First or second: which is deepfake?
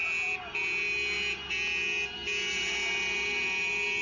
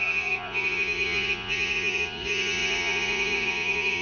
second